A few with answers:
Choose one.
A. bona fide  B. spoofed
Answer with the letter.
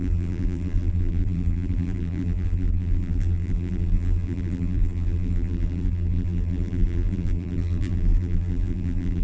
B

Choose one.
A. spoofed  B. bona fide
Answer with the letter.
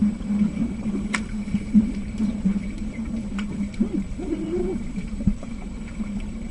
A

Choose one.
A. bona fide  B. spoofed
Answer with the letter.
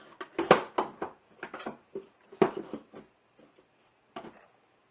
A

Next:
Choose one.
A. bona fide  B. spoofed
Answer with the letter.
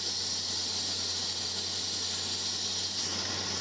A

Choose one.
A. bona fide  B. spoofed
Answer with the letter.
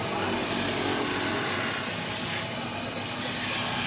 A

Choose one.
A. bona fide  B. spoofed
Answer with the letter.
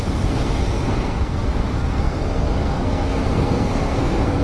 B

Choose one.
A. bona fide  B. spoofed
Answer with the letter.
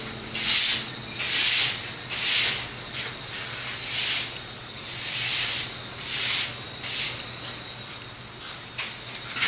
A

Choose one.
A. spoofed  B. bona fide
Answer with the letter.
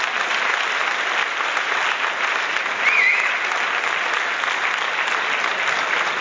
B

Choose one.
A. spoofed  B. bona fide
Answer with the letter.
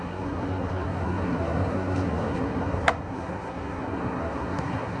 A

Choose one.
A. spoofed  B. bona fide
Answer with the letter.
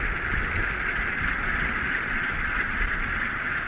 B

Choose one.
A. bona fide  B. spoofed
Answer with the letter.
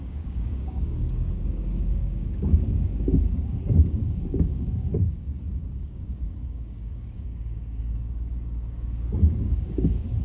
B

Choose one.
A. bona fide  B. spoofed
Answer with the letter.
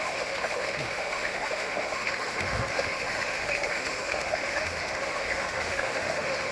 B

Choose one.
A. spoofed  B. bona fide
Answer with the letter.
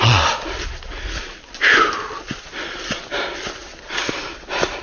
B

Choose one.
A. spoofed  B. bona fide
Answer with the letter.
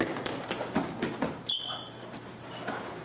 B